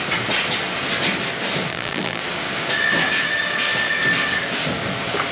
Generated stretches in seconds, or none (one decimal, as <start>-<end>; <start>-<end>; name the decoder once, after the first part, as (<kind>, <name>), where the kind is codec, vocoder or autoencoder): 1.7-2.2 (vocoder, BigVGAN v2)